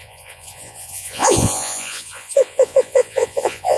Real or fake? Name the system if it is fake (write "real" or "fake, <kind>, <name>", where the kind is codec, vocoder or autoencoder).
fake, vocoder, Vocos